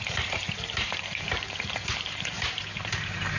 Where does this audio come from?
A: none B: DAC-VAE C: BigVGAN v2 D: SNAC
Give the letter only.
C